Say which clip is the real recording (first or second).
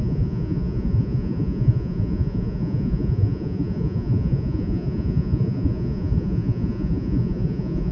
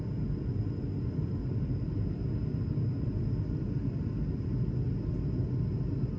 second